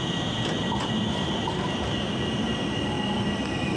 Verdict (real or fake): real